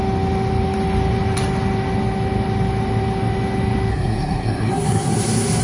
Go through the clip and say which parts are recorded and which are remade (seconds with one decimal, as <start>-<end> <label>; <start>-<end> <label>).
0.0-3.9 recorded; 3.9-5.6 remade